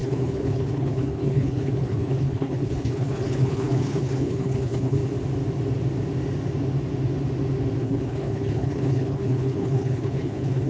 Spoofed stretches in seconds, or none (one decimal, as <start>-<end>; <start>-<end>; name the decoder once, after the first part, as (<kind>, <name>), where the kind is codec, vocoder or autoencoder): 0.0-5.0 (codec, HILCodec); 7.8-10.7